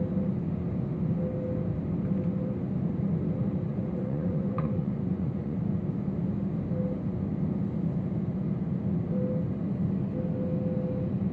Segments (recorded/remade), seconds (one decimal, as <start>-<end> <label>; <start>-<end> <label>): 0.0-3.7 recorded; 3.7-5.6 remade; 5.6-11.3 recorded